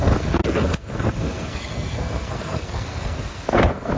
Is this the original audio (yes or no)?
no